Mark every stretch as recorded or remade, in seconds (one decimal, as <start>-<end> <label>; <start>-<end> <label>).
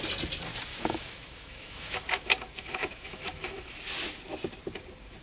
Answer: 0.0-0.7 recorded; 0.7-3.8 remade; 3.8-5.2 recorded